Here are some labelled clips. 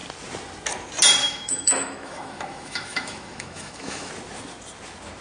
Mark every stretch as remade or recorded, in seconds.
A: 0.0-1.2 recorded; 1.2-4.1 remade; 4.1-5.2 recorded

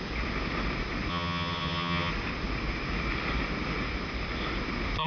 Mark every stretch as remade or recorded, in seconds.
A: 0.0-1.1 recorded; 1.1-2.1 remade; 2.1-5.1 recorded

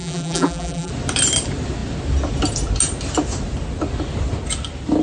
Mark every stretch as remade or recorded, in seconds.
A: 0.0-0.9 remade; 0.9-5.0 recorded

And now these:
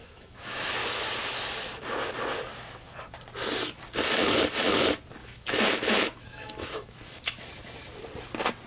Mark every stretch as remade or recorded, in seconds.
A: 0.0-0.7 remade; 0.7-5.2 recorded; 5.2-7.5 remade; 7.5-8.7 recorded